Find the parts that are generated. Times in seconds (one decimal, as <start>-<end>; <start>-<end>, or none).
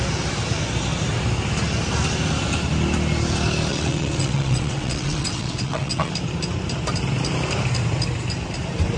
3.7-6.1